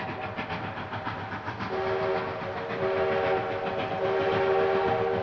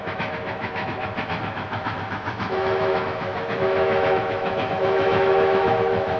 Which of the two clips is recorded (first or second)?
first